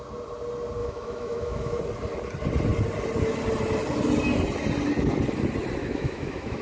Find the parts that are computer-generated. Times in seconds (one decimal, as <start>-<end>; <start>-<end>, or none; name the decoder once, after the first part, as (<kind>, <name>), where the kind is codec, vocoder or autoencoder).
0.8-1.8 (autoencoder, DAC-VAE); 5.8-6.6